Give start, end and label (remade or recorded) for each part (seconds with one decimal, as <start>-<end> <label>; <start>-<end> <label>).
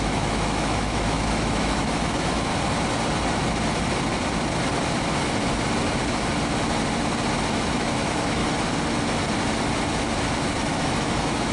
0.0-2.5 remade; 2.5-7.7 recorded; 7.7-8.4 remade; 8.4-10.6 recorded; 10.6-11.5 remade